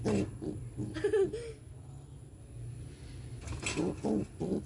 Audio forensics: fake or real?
real